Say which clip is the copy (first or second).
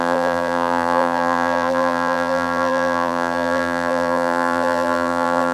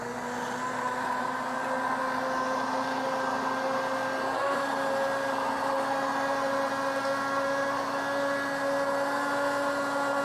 first